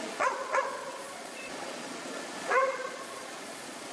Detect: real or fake fake